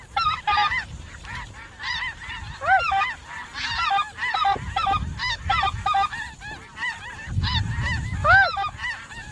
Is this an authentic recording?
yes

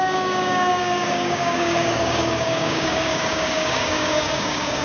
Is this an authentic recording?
no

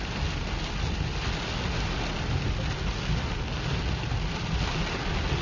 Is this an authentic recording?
yes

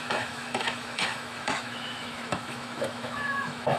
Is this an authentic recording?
no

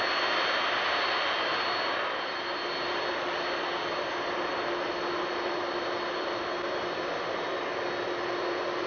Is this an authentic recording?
yes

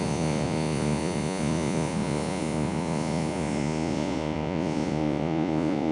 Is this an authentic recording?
no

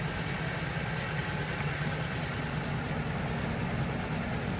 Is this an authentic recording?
yes